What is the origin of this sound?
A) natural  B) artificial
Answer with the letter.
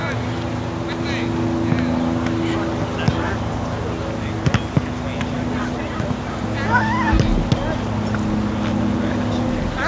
A